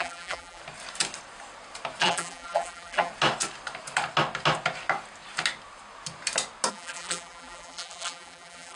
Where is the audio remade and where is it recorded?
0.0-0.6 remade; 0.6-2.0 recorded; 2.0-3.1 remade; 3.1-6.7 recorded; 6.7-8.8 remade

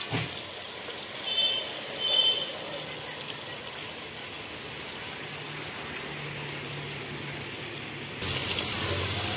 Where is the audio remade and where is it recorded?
0.0-9.4 recorded

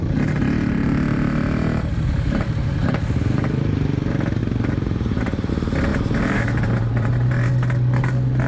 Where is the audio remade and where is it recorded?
0.0-1.1 recorded; 1.1-2.4 remade; 2.4-4.4 recorded; 4.4-5.5 remade; 5.5-5.9 recorded; 5.9-7.5 remade; 7.5-8.5 recorded